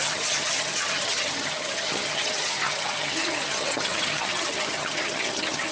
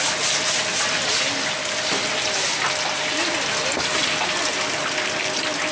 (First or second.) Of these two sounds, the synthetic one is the first